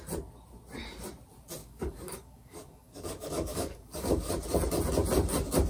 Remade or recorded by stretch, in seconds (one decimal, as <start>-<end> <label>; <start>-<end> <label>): 0.0-1.6 recorded; 1.6-4.3 remade; 4.3-5.7 recorded